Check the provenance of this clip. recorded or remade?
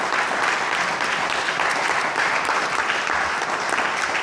recorded